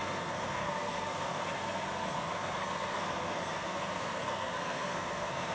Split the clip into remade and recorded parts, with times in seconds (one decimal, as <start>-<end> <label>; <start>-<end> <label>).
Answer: 0.0-5.5 remade